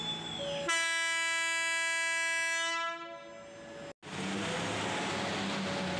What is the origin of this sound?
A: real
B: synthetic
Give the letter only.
A